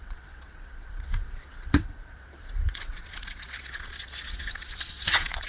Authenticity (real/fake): fake